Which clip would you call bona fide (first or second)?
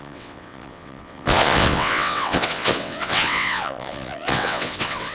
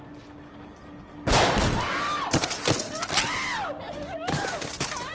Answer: second